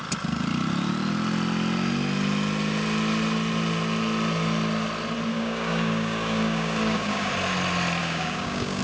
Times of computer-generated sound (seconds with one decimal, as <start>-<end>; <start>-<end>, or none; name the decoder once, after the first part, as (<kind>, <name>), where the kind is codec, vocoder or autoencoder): 5.3-7.3 (codec, DAC); 8.0-8.8